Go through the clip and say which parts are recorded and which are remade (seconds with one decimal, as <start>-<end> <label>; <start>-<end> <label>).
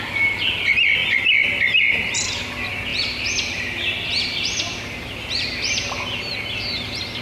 0.0-7.2 recorded